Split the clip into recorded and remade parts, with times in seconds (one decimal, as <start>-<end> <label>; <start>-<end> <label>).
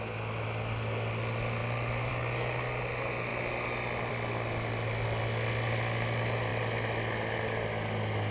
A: 0.0-8.3 recorded